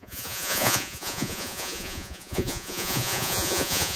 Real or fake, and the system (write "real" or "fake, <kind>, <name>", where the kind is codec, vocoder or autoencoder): fake, vocoder, Vocos